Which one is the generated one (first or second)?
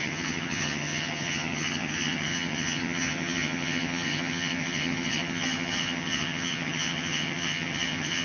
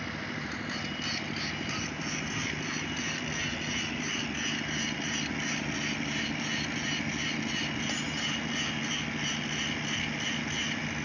first